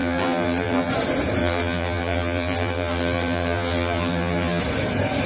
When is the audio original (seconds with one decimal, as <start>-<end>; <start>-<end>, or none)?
0.9-1.4; 4.6-5.3